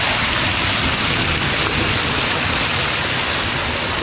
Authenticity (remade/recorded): recorded